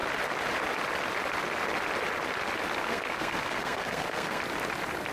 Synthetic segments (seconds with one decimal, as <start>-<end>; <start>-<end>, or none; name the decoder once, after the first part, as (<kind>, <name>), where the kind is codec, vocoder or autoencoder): 2.8-4.4 (codec, SNAC)